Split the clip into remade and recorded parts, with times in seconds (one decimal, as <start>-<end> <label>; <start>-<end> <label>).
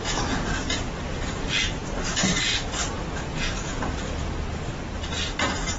0.0-3.3 recorded; 3.3-3.8 remade; 3.8-5.8 recorded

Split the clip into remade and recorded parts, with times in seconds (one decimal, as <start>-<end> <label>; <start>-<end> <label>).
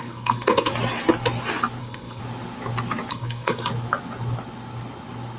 0.0-0.7 remade; 0.7-1.8 recorded; 1.8-2.2 remade; 2.2-3.1 recorded; 3.1-3.7 remade; 3.7-5.4 recorded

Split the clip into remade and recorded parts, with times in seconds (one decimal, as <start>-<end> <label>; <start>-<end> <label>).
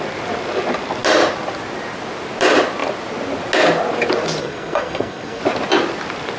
0.0-4.4 recorded; 4.4-5.4 remade; 5.4-6.4 recorded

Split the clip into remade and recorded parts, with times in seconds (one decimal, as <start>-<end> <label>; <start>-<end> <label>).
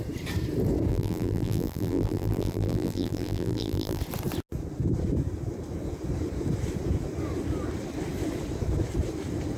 0.0-0.9 recorded; 0.9-4.0 remade; 4.0-9.6 recorded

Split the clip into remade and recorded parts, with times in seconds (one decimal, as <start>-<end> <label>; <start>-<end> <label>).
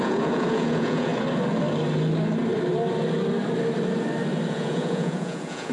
0.0-1.1 remade; 1.1-4.5 recorded; 4.5-5.7 remade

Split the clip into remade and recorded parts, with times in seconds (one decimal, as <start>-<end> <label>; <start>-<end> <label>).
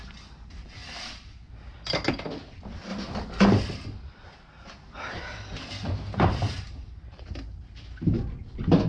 0.0-8.9 recorded